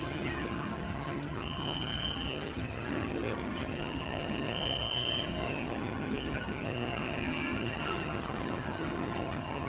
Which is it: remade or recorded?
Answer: remade